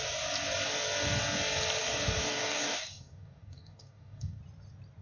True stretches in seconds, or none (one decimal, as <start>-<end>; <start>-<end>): 0.0-1.8; 4.4-5.0